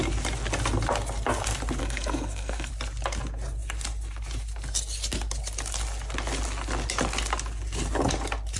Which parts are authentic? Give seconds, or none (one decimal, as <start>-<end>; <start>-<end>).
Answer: 0.0-1.8; 2.7-8.6